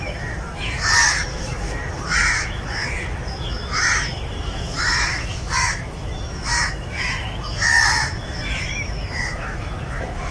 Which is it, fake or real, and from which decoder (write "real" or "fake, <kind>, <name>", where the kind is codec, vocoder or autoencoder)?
fake, autoencoder, DAC-VAE